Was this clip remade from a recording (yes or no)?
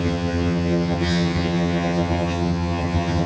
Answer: yes